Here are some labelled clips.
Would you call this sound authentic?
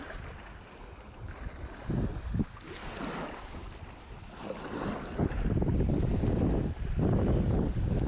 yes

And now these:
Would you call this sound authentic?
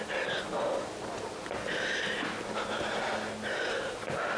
yes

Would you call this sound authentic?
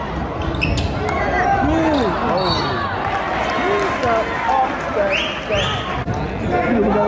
yes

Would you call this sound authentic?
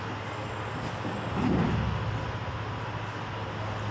yes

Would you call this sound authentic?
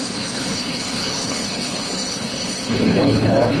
no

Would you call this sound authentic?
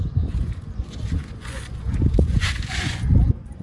no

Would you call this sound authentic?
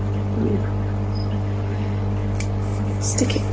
yes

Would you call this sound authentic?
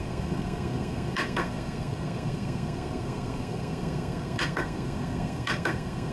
no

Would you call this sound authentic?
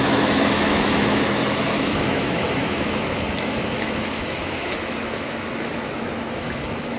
no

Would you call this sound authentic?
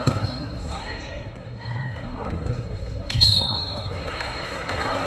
no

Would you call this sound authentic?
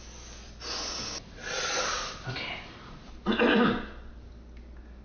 yes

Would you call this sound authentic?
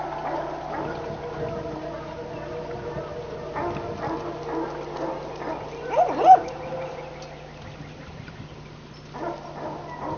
yes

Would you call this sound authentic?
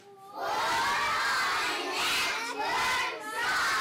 yes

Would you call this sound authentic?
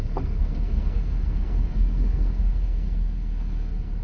no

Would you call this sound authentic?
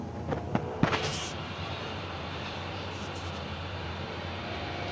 no